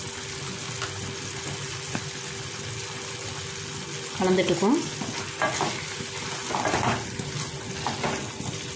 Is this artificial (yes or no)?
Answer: no